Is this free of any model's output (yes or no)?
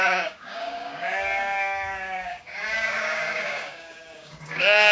no